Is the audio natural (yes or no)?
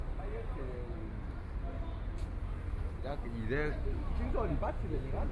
yes